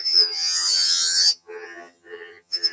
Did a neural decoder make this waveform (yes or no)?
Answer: yes